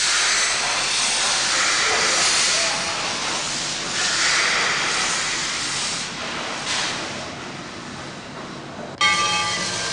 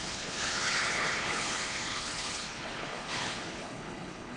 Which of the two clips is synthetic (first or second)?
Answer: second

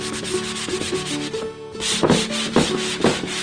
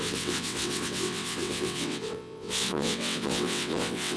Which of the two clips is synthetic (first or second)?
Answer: second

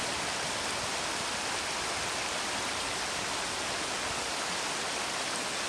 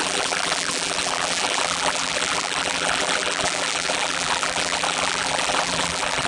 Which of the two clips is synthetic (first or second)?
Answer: second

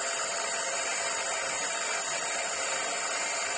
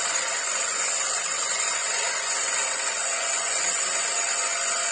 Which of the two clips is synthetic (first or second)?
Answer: second